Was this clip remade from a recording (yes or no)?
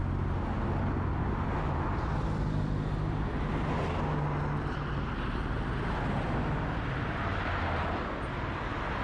no